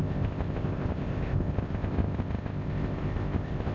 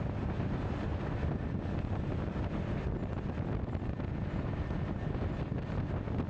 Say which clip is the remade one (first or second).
first